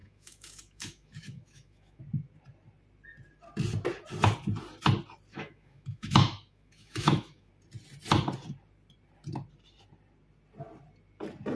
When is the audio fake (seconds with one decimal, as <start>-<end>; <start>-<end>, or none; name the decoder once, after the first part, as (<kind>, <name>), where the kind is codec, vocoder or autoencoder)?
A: 0.0-2.0 (autoencoder, DAC-VAE); 5.3-7.5